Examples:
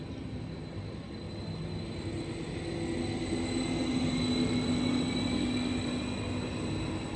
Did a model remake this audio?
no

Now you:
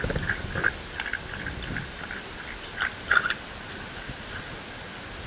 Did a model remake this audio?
no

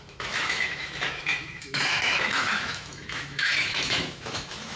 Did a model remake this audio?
yes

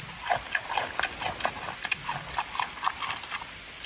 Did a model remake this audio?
no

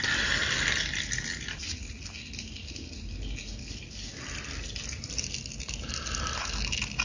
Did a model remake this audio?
no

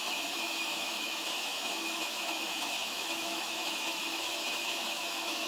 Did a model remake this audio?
yes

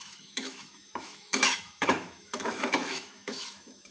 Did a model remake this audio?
yes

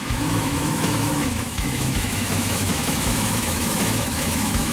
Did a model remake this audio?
yes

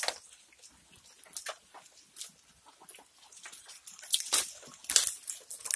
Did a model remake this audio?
no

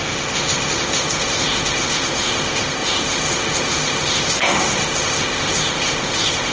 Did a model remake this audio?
yes